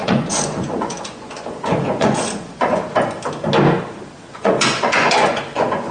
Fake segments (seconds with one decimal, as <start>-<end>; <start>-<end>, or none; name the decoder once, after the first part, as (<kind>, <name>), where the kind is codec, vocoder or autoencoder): 0.0-2.8 (vocoder, Vocos); 4.3-5.9